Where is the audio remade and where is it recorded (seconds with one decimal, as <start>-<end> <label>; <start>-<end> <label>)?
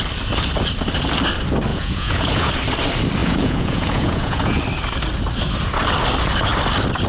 0.0-1.7 recorded; 1.7-2.5 remade; 2.5-3.2 recorded; 3.2-4.6 remade; 4.6-7.1 recorded